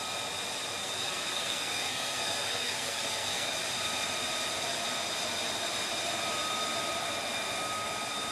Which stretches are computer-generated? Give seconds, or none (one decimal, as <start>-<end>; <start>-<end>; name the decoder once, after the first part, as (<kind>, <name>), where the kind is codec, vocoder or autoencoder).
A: 0.8-3.5 (codec, SNAC)